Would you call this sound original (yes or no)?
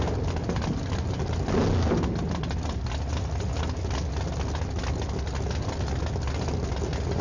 yes